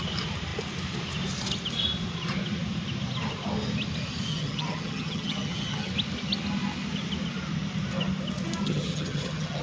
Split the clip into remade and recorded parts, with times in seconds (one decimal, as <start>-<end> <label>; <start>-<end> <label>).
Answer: 0.0-4.3 recorded; 4.3-5.9 remade; 5.9-8.6 recorded; 8.6-9.6 remade